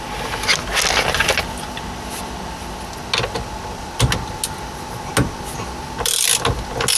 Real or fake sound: real